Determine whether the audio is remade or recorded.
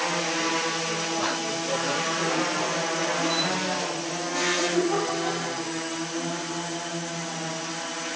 recorded